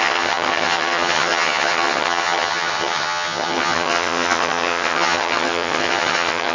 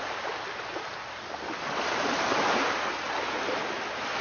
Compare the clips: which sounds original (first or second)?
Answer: second